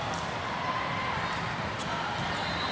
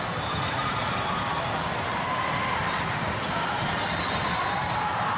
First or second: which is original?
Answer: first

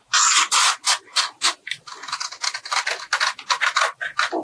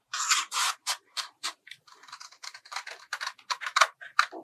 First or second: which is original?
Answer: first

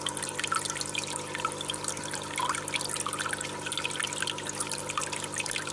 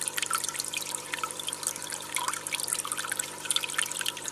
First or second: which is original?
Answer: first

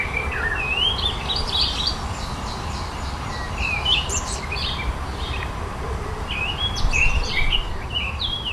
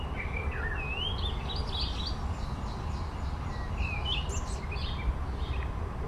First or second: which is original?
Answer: second